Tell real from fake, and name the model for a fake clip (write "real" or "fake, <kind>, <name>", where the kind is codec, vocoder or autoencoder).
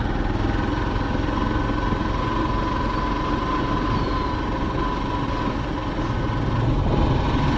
real